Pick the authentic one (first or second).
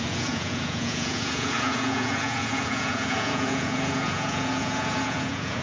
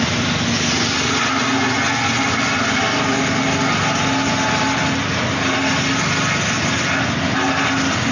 second